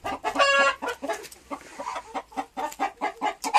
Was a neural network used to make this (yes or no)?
no